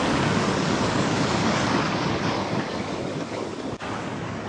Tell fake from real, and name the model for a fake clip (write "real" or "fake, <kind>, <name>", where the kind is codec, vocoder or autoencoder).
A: fake, codec, DAC